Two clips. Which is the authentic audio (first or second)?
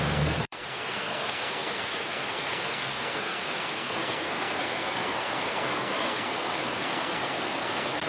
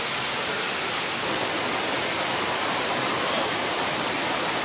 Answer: second